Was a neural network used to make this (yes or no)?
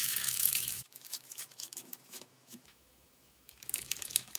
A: yes